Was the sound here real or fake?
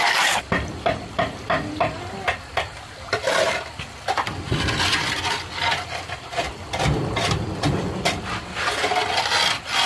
real